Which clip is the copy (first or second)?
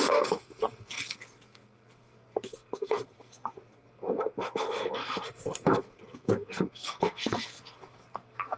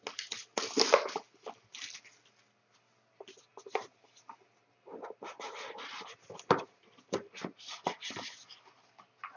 first